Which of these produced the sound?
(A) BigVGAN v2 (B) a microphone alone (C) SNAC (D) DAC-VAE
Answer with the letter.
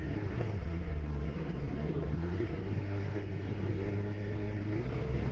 C